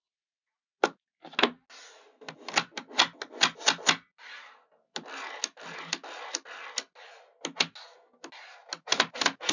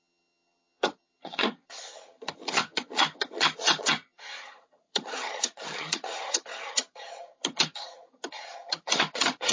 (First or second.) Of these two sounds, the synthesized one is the second